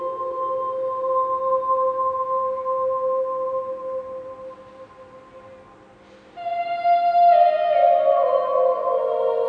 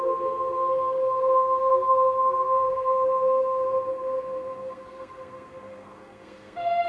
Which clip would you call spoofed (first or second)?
second